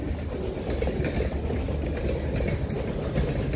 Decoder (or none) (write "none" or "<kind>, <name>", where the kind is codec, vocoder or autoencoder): none